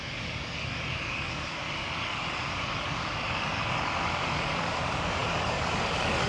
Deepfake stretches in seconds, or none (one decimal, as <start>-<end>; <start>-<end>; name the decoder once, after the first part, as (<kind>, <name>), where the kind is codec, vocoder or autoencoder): 0.0-6.3 (codec, DAC)